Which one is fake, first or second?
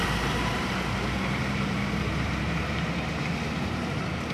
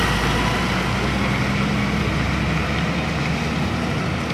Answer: first